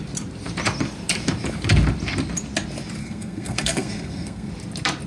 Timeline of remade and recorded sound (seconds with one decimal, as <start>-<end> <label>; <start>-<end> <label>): 0.0-3.0 recorded; 3.0-4.5 remade; 4.5-5.1 recorded